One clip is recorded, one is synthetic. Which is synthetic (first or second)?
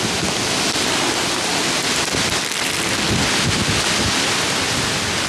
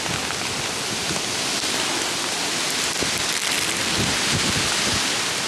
second